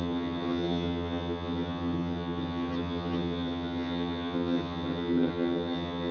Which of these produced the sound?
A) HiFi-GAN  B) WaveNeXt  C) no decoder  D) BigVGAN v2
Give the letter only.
A